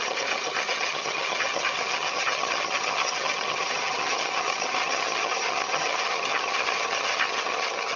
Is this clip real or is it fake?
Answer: fake